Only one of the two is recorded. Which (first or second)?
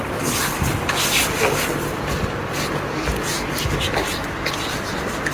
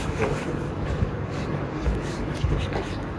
first